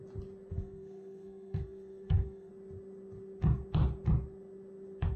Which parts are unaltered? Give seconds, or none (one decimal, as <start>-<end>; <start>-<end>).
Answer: 0.0-0.5; 2.5-5.2